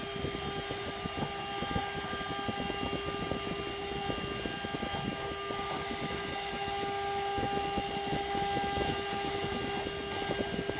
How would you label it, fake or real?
real